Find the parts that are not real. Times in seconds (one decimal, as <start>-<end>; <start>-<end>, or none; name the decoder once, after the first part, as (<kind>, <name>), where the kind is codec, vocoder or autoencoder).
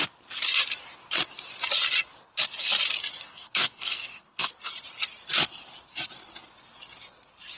3.3-4.5 (codec, SNAC)